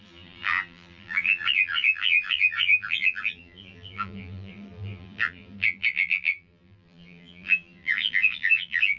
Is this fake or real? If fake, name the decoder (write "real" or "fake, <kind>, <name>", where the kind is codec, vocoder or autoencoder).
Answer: fake, vocoder, BigVGAN v2